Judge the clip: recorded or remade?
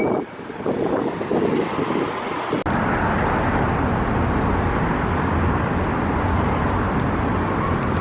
recorded